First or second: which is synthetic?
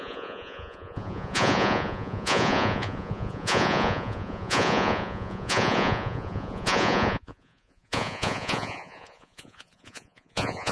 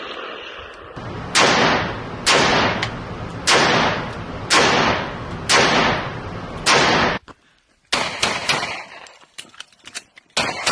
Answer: first